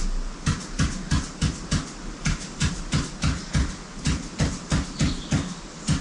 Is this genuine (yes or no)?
yes